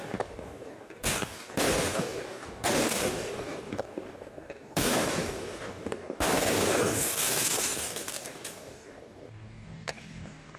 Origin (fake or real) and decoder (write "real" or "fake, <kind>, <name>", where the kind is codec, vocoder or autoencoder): fake, codec, DAC